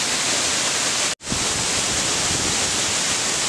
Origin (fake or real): real